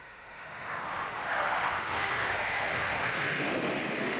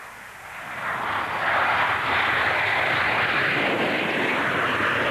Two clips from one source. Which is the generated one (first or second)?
first